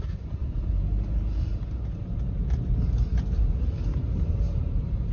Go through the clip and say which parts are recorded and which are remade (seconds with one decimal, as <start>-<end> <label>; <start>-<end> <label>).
0.0-0.4 remade; 0.4-2.0 recorded; 2.0-5.1 remade